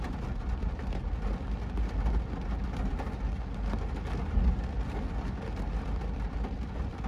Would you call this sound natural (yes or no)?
yes